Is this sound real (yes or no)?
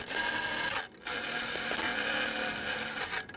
yes